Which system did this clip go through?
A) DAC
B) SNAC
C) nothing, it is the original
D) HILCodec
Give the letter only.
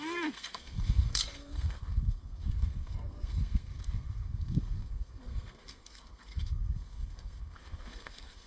B